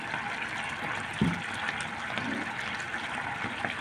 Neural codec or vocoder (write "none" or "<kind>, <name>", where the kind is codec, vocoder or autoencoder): none